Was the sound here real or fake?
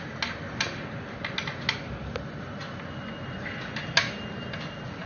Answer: real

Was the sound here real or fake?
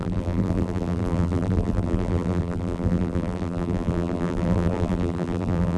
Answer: fake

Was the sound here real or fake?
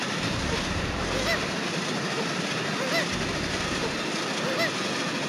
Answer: real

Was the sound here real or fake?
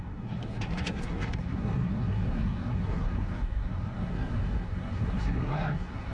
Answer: fake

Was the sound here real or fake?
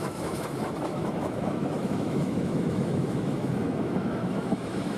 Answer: fake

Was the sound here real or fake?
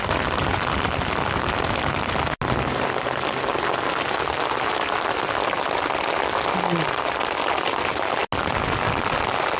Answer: real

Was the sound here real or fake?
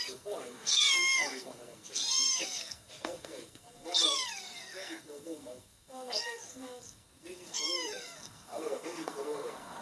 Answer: fake